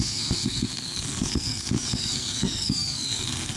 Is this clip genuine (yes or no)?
no